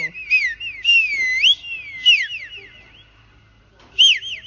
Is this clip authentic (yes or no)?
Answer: yes